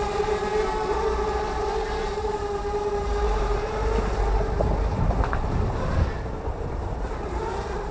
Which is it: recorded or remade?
remade